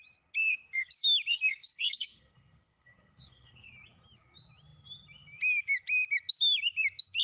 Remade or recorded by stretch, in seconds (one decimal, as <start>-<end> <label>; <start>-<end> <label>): 0.0-0.4 recorded; 0.4-0.9 remade; 0.9-1.3 recorded; 1.3-3.7 remade; 3.7-7.2 recorded